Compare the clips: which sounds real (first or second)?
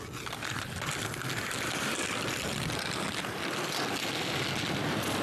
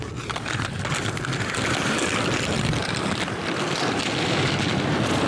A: first